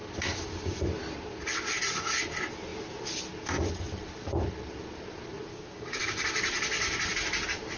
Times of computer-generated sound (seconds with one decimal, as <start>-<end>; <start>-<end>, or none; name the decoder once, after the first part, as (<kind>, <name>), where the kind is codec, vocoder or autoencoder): 5.5-6.0 (codec, DAC)